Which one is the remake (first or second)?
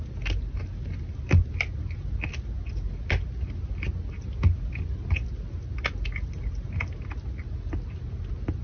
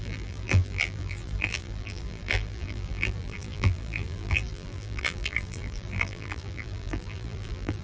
second